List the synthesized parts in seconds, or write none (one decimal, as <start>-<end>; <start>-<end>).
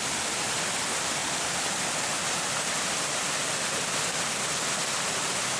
none